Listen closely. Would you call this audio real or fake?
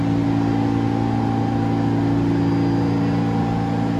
real